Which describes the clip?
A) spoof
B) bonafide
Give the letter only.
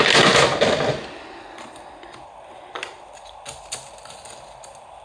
B